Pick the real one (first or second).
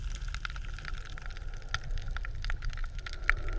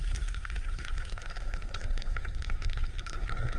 first